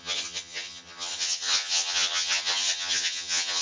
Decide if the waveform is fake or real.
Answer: fake